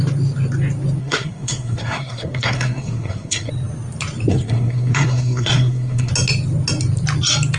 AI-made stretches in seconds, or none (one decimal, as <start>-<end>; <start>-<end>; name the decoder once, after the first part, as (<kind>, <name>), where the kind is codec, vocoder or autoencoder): 1.0-3.5 (codec, SNAC); 4.3-6.1